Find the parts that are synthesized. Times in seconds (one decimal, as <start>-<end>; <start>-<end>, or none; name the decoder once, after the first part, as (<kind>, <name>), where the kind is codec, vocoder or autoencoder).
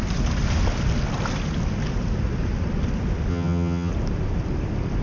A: 3.3-3.9 (vocoder, HiFi-GAN)